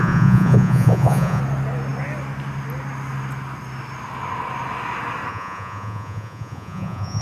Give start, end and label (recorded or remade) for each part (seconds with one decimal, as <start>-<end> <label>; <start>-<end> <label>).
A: 0.0-1.4 remade; 1.4-5.3 recorded; 5.3-7.2 remade